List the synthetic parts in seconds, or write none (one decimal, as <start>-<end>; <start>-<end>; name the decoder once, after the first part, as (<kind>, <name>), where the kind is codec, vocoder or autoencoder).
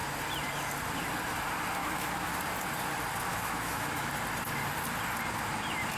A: 1.8-2.3 (autoencoder, DAC-VAE); 3.3-4.1